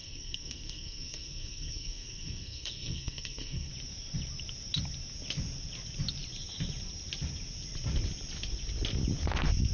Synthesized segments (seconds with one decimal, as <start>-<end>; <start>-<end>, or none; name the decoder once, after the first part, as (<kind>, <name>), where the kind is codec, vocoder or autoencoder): 0.0-3.7 (codec, SNAC)